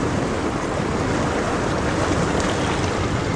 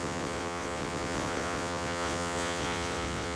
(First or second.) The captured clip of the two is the first